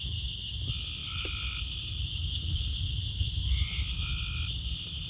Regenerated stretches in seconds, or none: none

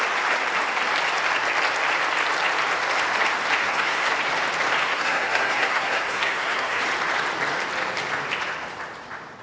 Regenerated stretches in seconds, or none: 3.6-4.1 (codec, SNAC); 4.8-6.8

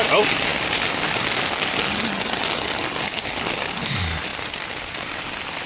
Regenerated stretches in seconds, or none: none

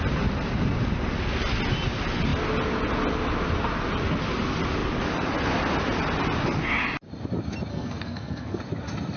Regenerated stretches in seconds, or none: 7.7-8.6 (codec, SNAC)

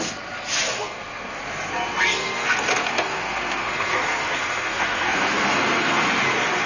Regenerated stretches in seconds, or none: 0.7-1.4 (codec, SNAC); 2.0-6.0

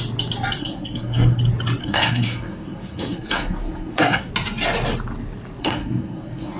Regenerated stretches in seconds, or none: 0.6-1.4 (codec, SNAC); 1.8-4.3; 5.6-6.6

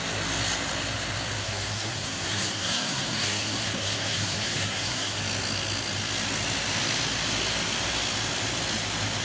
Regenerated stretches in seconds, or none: 1.4-5.2 (codec, SNAC)

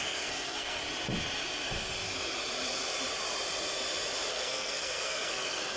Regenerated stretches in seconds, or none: 0.0-0.8 (codec, SNAC); 4.3-5.8